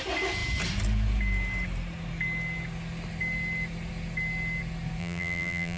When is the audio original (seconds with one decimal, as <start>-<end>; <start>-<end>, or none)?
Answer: 0.0-5.0